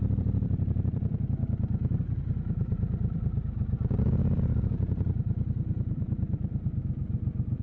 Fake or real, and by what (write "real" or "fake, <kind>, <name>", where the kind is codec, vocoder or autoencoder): fake, vocoder, BigVGAN v2